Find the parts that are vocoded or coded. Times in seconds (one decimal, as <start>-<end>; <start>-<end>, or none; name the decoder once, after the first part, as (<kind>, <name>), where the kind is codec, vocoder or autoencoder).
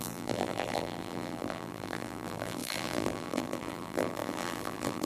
0.0-5.1 (vocoder, BigVGAN v2)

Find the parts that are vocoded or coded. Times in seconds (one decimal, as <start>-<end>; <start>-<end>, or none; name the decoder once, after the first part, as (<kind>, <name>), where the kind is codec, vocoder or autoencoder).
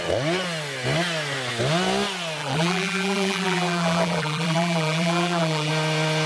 2.4-5.7 (vocoder, BigVGAN v2)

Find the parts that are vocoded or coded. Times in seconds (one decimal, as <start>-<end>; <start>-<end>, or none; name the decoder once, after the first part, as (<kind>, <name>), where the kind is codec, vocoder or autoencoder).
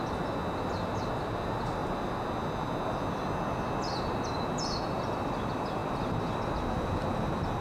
none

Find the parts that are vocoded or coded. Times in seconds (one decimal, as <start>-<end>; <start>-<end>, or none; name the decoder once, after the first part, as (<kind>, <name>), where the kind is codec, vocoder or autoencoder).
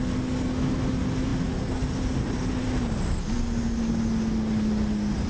none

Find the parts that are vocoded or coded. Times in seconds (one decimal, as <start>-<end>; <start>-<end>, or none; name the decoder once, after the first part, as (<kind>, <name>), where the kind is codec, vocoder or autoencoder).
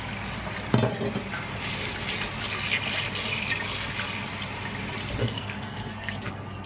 5.2-6.7 (codec, SNAC)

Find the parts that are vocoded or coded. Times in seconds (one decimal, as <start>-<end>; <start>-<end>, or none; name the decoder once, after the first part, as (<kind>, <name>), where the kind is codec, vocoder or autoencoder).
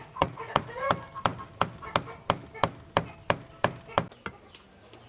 0.0-0.9 (vocoder, Vocos)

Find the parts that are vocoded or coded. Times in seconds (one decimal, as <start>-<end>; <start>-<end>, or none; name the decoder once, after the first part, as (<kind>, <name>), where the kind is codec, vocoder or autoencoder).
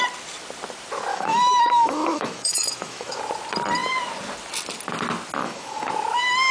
1.1-3.2 (autoencoder, DAC-VAE); 5.4-5.9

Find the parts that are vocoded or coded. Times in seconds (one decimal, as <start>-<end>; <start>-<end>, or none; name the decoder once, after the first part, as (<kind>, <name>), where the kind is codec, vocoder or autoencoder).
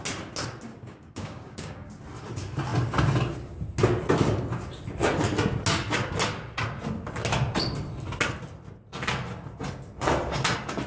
0.7-2.0 (codec, DAC)